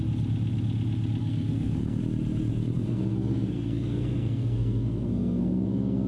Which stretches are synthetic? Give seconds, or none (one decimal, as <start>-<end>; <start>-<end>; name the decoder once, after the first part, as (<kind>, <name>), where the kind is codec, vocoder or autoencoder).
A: 1.2-2.0 (codec, SNAC); 2.5-6.1